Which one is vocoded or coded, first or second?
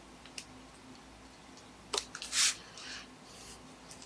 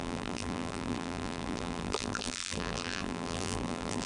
second